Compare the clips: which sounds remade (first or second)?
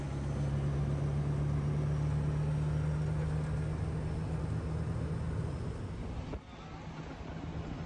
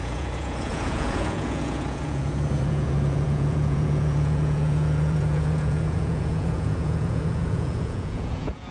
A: second